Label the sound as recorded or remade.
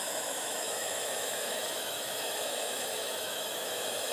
remade